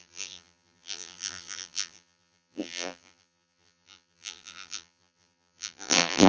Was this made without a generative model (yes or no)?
no